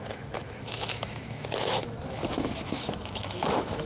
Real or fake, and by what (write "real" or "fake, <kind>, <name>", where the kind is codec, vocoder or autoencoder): fake, autoencoder, DAC-VAE